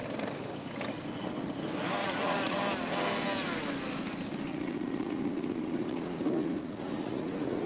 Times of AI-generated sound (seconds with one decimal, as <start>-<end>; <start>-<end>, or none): 2.0-2.6; 4.5-7.7